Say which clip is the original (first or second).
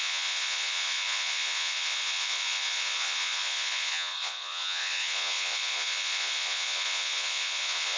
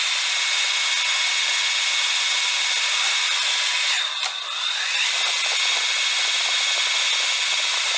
second